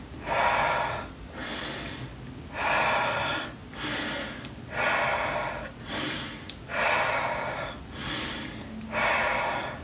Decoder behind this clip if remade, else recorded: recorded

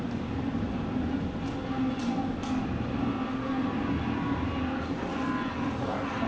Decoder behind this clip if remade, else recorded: recorded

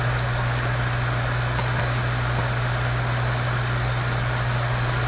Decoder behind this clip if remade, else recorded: recorded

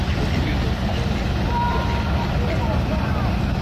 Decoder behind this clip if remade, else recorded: recorded